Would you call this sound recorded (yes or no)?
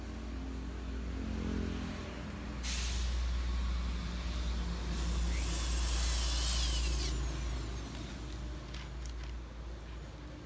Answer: yes